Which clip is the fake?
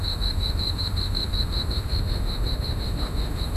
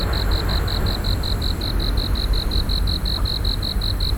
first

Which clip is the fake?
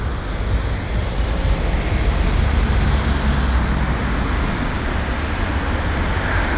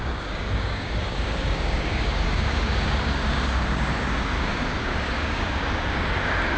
second